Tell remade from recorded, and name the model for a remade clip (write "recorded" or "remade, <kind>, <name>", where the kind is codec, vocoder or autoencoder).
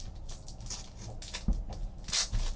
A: recorded